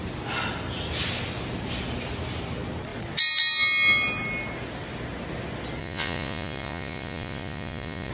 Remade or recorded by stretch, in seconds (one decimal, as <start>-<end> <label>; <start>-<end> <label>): 0.0-5.8 recorded; 5.8-8.1 remade